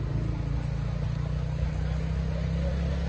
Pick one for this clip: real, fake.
real